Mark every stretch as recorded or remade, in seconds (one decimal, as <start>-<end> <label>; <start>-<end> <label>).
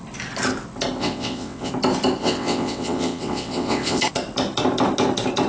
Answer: 0.0-1.0 recorded; 1.0-1.7 remade; 1.7-2.2 recorded; 2.2-4.0 remade; 4.0-5.5 recorded